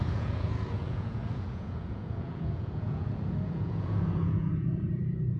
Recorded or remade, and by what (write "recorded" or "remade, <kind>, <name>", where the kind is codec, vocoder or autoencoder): remade, vocoder, Vocos